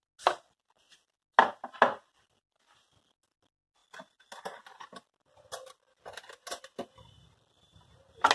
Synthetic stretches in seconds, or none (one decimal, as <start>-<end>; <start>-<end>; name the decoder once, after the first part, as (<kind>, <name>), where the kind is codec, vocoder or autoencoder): none